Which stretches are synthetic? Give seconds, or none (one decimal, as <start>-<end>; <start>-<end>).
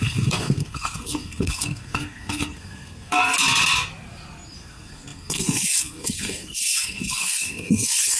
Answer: 0.0-3.2; 4.6-8.2